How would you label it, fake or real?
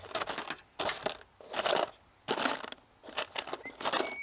real